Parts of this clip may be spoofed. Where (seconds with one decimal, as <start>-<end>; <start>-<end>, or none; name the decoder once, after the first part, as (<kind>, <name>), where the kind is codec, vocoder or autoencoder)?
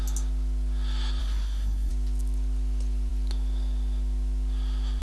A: 1.2-1.9 (codec, SNAC)